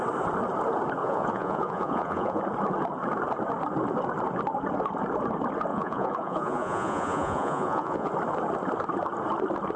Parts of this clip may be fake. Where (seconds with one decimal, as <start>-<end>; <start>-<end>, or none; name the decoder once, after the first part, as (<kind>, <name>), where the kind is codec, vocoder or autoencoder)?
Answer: 1.0-2.4 (vocoder, Vocos); 5.7-8.1